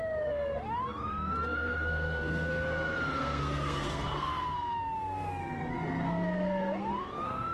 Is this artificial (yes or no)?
yes